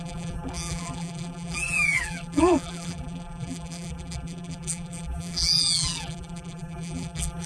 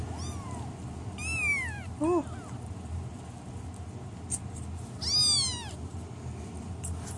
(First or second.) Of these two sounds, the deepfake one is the first